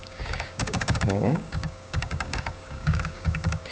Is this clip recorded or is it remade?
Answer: remade